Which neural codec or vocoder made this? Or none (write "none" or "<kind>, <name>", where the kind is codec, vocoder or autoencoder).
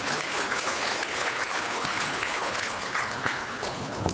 codec, HILCodec